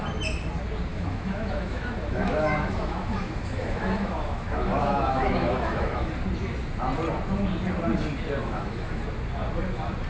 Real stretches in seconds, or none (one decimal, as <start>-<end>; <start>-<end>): 0.0-0.9; 6.1-8.4; 9.0-10.1